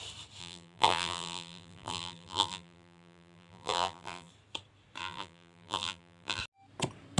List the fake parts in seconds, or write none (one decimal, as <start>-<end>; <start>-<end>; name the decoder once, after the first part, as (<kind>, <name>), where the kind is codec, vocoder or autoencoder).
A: 0.4-4.3 (vocoder, BigVGAN v2); 5.0-6.4